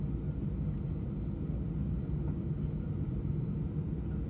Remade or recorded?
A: recorded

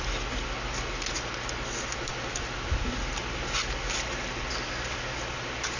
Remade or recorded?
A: recorded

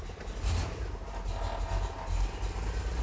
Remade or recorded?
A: recorded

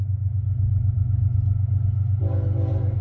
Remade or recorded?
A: recorded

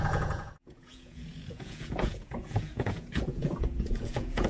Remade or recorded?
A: remade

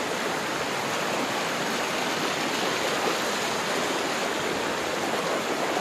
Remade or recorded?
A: recorded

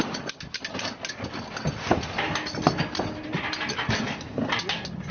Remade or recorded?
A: recorded